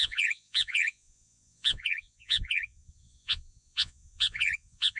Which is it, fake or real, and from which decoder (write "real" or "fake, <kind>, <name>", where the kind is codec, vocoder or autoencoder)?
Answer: fake, vocoder, Vocos